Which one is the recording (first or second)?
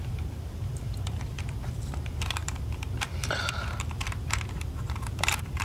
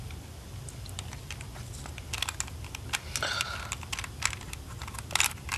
second